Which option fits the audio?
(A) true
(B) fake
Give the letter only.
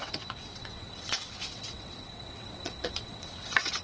B